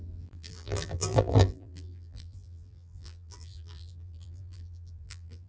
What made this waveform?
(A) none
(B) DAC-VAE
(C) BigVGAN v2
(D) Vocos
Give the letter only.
C